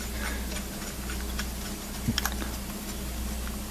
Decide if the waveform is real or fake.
real